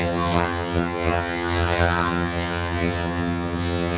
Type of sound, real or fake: fake